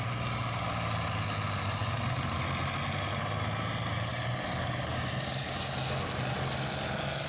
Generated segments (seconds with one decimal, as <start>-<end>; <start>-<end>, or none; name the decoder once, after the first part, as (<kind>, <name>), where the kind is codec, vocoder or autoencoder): 4.1-5.7 (vocoder, BigVGAN v2)